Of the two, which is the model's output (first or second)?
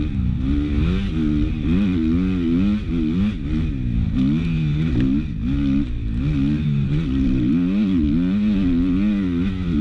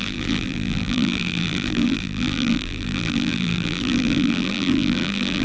second